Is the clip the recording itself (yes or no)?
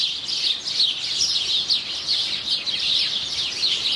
yes